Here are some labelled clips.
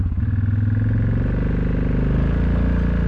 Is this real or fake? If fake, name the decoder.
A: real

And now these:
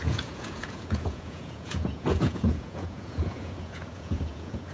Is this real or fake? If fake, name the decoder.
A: fake, vocoder, Vocos